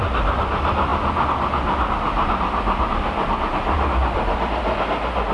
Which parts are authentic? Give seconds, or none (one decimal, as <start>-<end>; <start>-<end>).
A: 0.0-5.3